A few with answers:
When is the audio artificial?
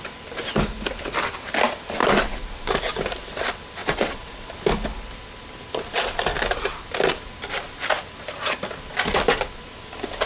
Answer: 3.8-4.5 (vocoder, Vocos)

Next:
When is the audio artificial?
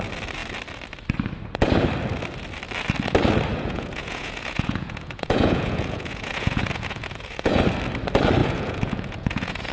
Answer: 3.5-7.6 (vocoder, Vocos); 8.4-9.7